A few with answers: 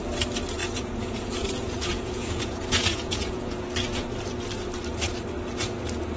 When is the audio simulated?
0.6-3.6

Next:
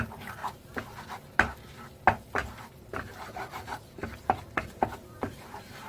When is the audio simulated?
2.4-5.9